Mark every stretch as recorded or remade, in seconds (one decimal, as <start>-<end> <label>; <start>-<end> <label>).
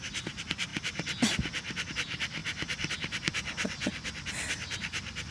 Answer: 0.0-5.3 recorded